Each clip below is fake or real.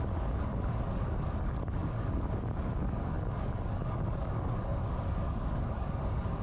fake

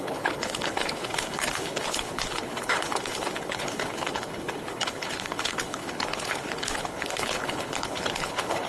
fake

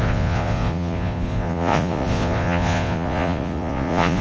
fake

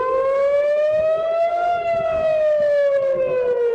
fake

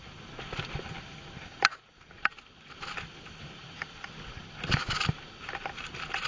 fake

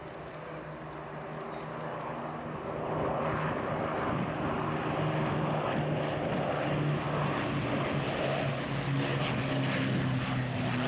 real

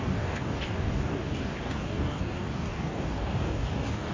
fake